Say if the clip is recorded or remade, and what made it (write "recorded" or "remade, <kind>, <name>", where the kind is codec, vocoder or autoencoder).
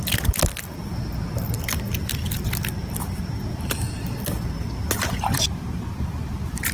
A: recorded